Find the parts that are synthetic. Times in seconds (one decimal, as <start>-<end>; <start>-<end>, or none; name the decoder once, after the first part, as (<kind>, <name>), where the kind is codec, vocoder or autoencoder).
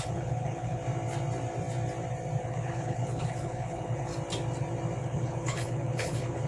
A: 0.0-0.8 (codec, HILCodec); 2.4-4.1; 5.0-6.5